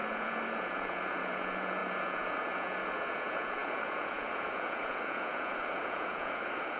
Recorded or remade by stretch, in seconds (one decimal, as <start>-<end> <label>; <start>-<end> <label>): 0.0-6.8 remade